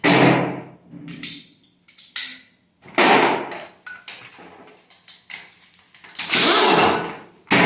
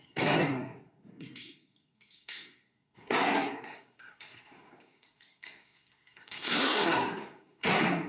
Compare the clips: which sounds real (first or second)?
first